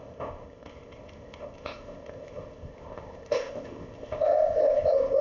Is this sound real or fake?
fake